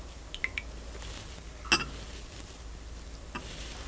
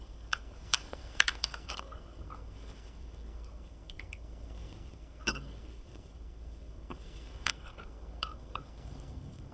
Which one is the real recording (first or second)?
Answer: first